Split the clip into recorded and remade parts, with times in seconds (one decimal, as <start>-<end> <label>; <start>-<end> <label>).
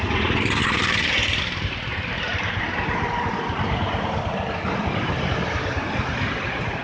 0.0-6.8 recorded